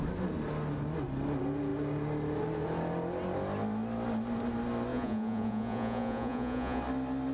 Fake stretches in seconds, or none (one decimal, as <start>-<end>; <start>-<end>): 4.9-6.8